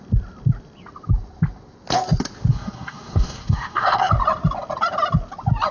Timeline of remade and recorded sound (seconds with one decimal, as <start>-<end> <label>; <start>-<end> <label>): 0.0-2.5 recorded; 2.5-4.1 remade; 4.1-5.7 recorded